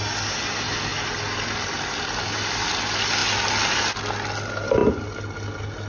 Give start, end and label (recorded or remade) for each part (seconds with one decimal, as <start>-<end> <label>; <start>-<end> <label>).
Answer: 0.0-5.9 recorded